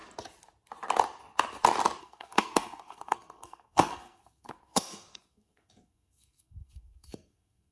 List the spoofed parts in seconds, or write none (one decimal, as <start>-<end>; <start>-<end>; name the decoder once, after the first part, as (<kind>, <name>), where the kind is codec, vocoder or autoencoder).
2.0-7.7 (codec, SNAC)